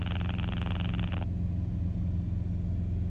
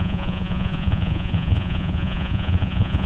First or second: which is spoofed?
second